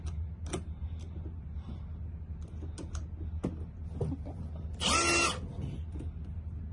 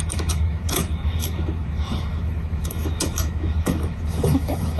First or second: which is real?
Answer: first